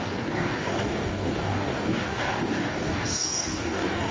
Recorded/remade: remade